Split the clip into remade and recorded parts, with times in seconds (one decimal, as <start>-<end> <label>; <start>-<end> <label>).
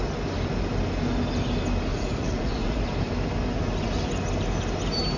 0.0-1.9 recorded; 1.9-2.8 remade; 2.8-5.2 recorded